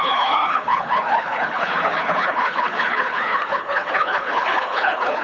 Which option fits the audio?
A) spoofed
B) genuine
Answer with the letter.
A